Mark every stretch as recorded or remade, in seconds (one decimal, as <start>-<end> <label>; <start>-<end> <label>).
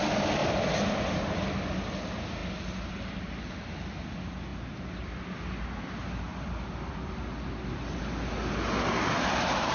0.0-0.4 recorded; 0.4-1.0 remade; 1.0-2.4 recorded; 2.4-2.9 remade; 2.9-4.5 recorded; 4.5-5.4 remade; 5.4-6.3 recorded; 6.3-7.1 remade; 7.1-9.7 recorded